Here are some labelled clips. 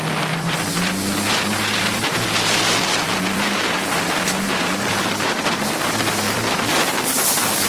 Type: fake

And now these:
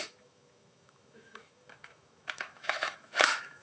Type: fake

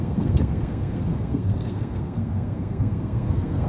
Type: fake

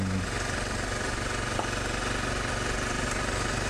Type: real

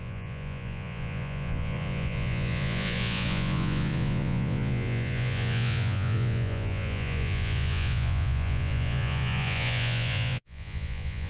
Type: fake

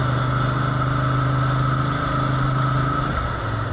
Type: real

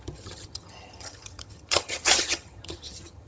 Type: fake